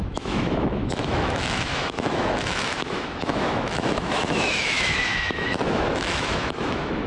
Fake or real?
fake